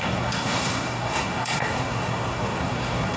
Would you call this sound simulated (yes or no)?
yes